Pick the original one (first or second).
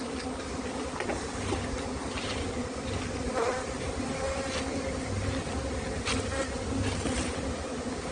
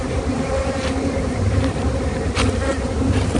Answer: first